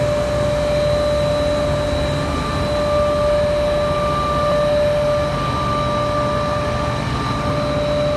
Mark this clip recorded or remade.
recorded